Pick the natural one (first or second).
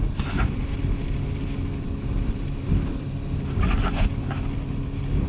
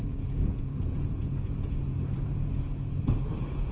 first